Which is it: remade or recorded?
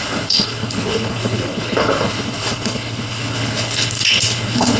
remade